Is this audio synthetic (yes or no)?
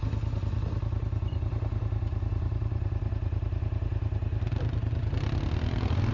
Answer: no